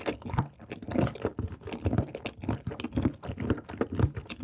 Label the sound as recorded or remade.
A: recorded